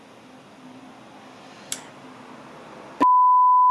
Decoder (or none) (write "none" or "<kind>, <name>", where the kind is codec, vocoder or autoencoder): none